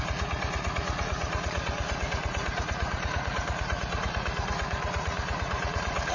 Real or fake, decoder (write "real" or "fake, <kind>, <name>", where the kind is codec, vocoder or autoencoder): fake, vocoder, Vocos